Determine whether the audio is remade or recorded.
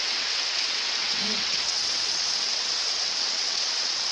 remade